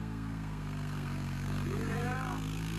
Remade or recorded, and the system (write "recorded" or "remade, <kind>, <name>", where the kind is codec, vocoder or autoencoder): remade, codec, SNAC